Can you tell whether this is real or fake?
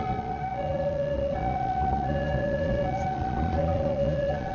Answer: fake